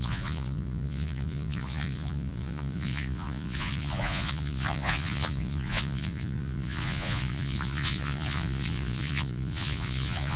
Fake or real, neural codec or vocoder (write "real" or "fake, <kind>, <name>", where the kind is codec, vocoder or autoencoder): fake, vocoder, Vocos